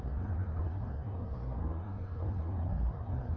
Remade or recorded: remade